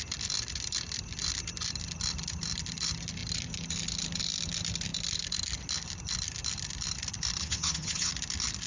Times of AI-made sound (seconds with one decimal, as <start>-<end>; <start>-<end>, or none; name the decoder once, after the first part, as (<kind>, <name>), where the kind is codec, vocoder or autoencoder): 7.4-8.1 (vocoder, HiFi-GAN)